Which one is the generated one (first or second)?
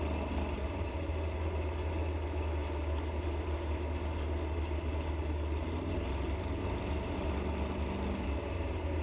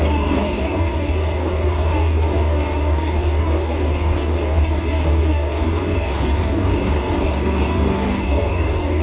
second